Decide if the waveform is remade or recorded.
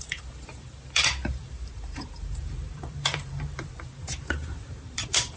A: remade